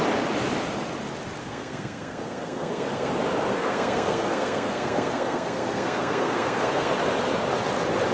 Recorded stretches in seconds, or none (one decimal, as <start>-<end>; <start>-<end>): 0.0-1.4; 3.1-3.5; 6.9-8.1